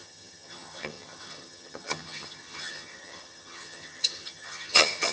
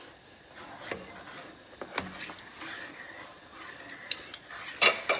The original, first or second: second